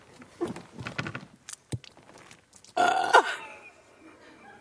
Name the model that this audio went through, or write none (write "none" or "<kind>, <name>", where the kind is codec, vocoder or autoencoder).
none